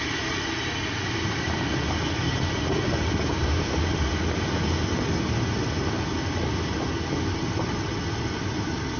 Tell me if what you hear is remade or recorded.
recorded